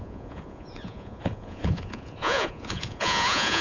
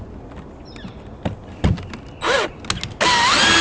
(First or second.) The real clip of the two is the second